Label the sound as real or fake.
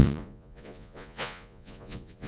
fake